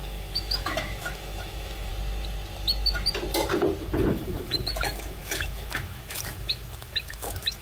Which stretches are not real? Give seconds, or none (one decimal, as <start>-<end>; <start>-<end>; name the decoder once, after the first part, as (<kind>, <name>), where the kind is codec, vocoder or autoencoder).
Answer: 0.0-1.9 (autoencoder, DAC-VAE); 4.1-7.6